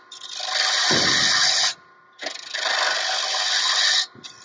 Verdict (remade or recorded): recorded